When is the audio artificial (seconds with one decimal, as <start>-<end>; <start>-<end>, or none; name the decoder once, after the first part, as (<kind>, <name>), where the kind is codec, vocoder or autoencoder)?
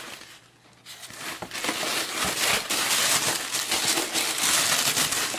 none